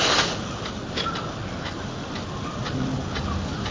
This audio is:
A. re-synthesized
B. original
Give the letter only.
B